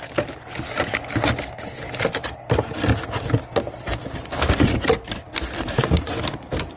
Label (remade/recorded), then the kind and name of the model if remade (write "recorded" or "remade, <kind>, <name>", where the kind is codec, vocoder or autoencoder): recorded